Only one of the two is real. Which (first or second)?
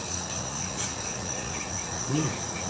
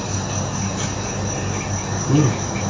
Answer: second